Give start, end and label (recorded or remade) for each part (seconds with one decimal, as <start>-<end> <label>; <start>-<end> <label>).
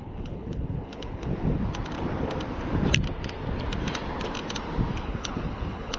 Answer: 0.0-1.3 remade; 1.3-4.9 recorded; 4.9-6.0 remade